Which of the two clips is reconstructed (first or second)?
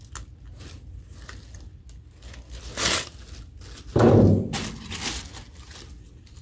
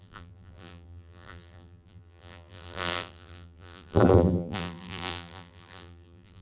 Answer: second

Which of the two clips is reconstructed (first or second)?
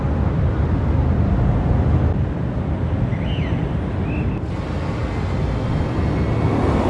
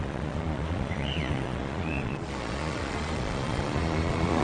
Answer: second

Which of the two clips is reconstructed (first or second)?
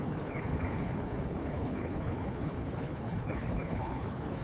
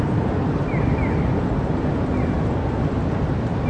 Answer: first